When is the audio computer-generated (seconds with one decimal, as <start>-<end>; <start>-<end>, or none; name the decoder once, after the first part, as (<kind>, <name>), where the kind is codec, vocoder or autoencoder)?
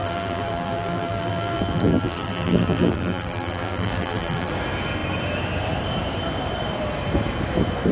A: 0.0-4.5 (vocoder, BigVGAN v2)